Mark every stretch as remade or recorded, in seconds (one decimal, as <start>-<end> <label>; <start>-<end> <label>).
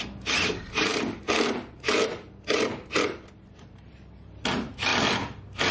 0.0-4.9 remade; 4.9-5.7 recorded